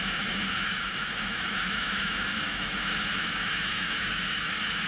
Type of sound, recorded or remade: remade